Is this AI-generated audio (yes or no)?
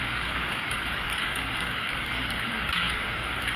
yes